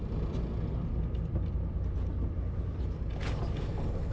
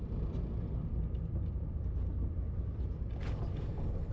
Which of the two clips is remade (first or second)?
second